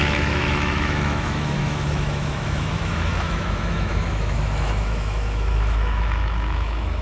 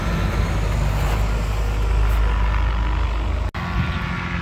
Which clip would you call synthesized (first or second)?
first